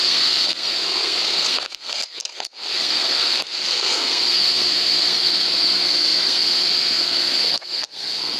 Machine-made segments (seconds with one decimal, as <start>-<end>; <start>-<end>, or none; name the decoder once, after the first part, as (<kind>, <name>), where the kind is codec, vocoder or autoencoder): 0.0-8.4 (codec, SNAC)